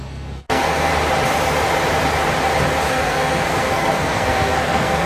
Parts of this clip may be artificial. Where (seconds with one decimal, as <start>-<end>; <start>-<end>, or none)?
0.0-0.9; 2.9-5.1